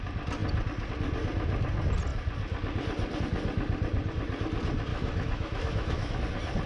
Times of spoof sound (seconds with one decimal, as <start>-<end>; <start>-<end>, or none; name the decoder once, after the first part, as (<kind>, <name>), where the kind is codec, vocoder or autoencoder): 4.9-6.2 (autoencoder, DAC-VAE)